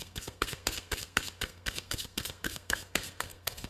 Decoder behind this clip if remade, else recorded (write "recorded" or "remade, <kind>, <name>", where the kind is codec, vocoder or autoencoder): remade, codec, SNAC